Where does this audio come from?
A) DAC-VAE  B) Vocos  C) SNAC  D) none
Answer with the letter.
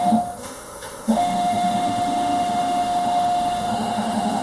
A